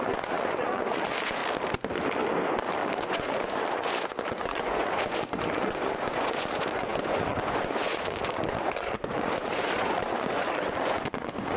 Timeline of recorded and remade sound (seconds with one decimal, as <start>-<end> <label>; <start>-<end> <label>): 0.0-1.4 remade; 1.4-3.0 recorded; 3.0-11.6 remade